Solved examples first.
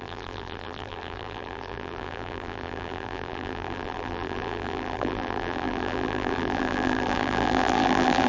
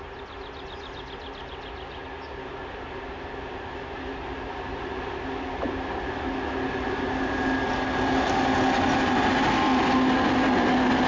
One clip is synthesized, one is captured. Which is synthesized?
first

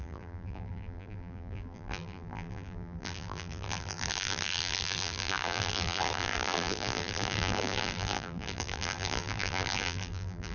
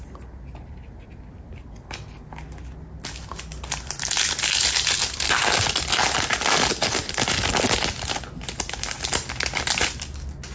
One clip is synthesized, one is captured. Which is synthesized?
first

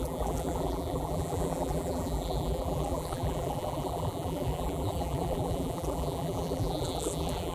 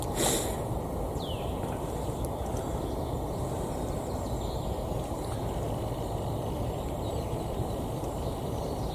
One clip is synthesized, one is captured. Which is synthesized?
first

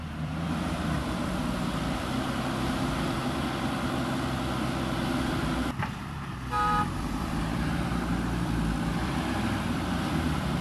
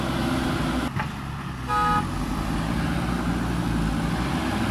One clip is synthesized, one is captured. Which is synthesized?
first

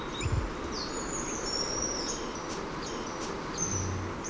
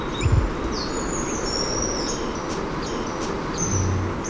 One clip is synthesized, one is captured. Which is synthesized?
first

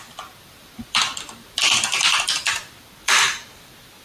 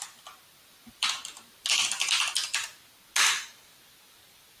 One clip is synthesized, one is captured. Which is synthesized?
first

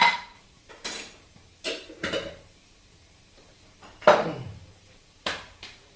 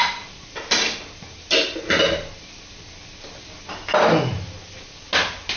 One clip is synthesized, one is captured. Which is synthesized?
first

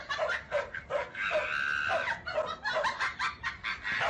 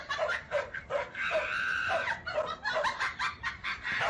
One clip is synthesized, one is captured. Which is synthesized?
second